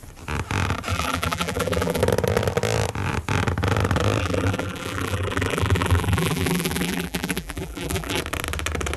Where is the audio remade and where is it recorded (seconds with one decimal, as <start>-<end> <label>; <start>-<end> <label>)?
0.0-0.9 recorded; 0.9-2.0 remade; 2.0-4.2 recorded; 4.2-8.2 remade; 8.2-9.0 recorded